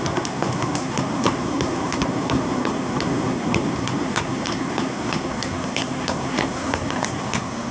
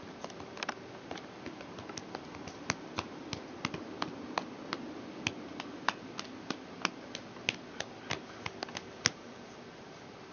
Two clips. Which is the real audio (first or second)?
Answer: second